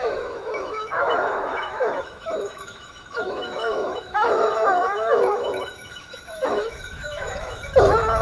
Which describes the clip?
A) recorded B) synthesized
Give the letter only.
B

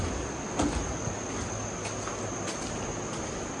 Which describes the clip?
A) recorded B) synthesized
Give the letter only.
A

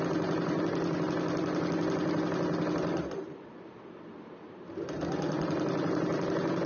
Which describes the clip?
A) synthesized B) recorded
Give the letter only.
B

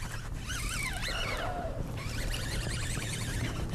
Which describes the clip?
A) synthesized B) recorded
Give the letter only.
B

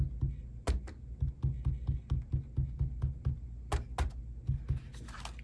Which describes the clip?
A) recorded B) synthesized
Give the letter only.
A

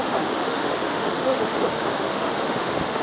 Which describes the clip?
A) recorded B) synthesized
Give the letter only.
B